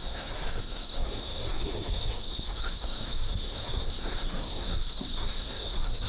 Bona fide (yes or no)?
no